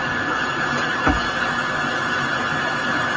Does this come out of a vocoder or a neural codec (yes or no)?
no